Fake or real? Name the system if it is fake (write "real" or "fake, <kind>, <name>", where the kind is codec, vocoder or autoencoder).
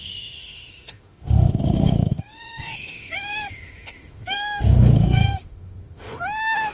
fake, autoencoder, DAC-VAE